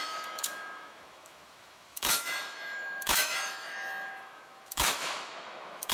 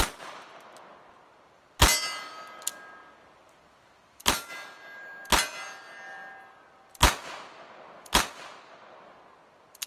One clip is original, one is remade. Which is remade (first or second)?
first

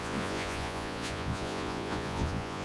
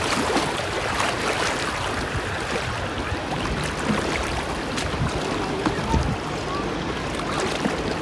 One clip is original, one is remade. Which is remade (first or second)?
first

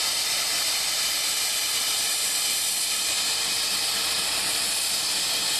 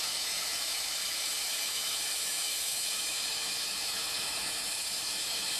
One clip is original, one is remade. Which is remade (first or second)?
second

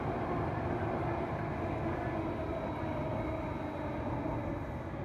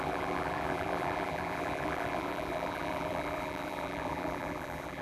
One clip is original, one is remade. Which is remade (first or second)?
second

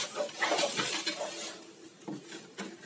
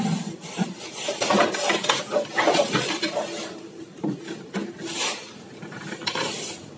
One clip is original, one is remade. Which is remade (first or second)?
second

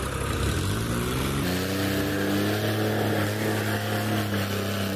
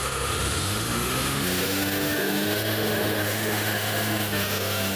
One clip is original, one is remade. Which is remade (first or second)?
second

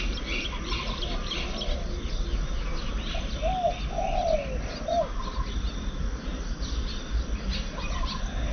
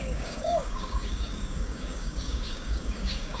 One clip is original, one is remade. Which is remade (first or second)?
second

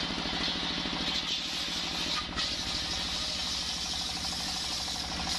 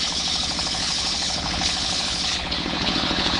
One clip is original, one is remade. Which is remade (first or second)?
second